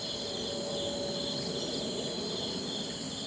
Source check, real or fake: real